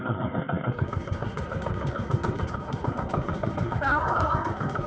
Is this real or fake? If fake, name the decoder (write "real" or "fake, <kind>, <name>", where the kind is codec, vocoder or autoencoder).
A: fake, codec, SNAC